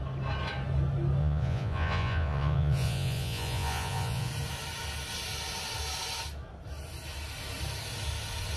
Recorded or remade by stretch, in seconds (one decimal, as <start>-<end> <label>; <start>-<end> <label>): 0.0-1.2 recorded; 1.2-4.3 remade; 4.3-8.6 recorded